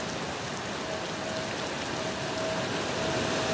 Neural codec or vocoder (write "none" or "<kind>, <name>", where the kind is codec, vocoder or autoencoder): none